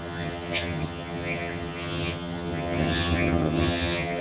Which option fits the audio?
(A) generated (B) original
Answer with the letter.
A